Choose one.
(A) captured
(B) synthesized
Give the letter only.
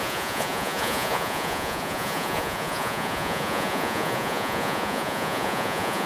B